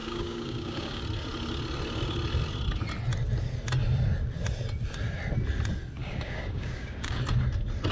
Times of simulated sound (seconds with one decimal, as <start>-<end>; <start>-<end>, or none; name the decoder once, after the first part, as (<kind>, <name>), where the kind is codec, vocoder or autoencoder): 0.0-1.0 (codec, DAC); 6.0-7.2